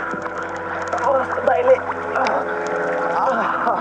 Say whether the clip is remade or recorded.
recorded